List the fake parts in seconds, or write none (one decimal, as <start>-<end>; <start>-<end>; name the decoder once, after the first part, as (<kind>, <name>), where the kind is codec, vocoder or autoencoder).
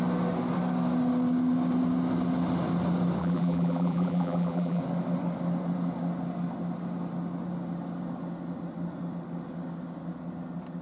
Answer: 3.2-4.8 (vocoder, BigVGAN v2)